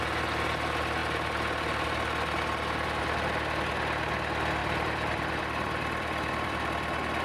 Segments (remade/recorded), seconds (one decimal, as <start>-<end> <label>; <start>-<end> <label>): 0.0-4.6 recorded; 4.6-6.7 remade; 6.7-7.2 recorded